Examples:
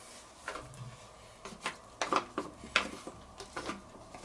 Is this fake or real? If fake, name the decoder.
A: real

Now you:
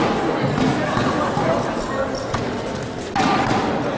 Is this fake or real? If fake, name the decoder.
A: real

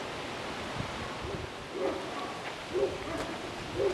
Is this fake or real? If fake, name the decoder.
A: real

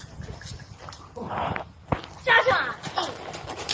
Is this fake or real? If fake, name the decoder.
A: real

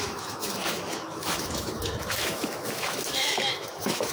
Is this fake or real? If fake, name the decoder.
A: fake, autoencoder, DAC-VAE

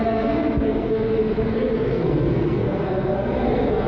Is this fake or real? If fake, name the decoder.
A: fake, codec, SNAC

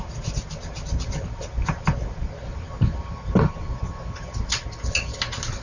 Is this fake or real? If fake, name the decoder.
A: real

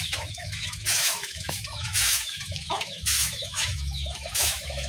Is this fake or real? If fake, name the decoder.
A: fake, autoencoder, DAC-VAE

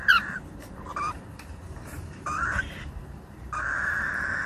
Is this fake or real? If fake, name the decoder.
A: fake, vocoder, BigVGAN v2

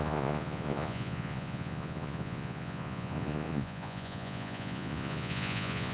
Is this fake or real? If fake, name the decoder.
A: fake, vocoder, Vocos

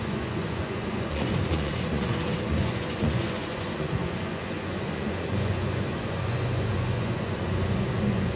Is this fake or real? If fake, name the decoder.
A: fake, vocoder, Vocos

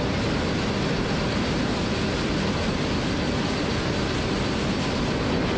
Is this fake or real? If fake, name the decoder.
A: real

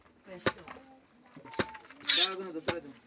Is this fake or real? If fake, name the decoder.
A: real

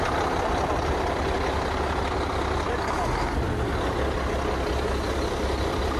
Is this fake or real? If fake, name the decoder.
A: real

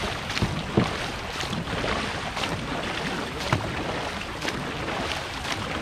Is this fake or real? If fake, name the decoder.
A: real